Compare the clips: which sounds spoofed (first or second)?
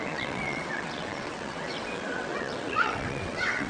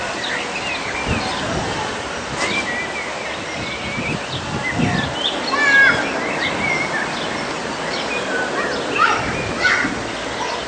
first